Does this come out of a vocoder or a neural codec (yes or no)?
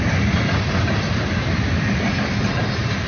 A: no